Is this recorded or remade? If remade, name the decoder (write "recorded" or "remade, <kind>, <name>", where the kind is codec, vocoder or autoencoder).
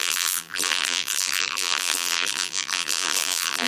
remade, vocoder, BigVGAN v2